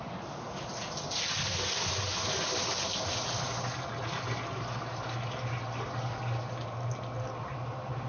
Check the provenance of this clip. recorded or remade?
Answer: recorded